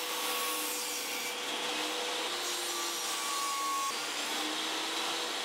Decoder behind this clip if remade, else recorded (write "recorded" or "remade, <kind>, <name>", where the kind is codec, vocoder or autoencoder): recorded